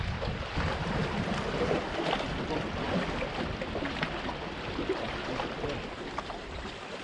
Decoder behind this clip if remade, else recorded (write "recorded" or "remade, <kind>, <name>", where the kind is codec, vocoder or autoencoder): recorded